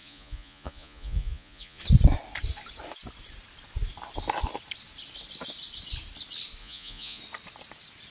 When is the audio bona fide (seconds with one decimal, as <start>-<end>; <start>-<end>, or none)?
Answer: 1.8-6.6; 7.2-8.1